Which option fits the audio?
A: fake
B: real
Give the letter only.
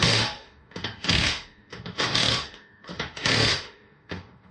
A